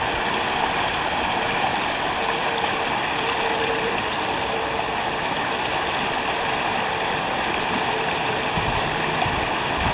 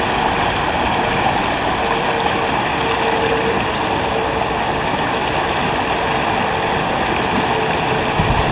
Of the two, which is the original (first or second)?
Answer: second